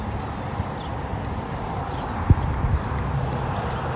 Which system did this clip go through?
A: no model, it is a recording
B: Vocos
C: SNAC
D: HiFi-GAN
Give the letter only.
A